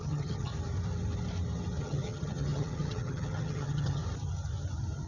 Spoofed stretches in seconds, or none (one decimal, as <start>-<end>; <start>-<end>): 0.0-0.5; 1.8-4.0